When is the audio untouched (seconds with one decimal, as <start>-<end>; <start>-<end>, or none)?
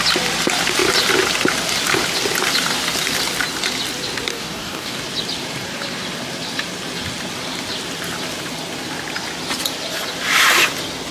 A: 0.0-4.3; 5.0-11.1